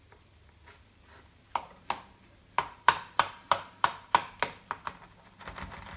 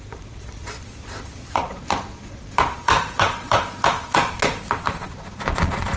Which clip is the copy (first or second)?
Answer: second